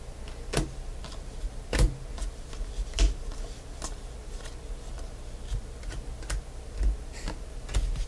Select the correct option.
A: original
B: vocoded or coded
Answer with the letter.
A